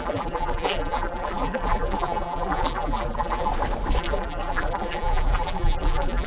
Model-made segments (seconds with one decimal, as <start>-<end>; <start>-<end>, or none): 0.0-3.5; 4.0-6.3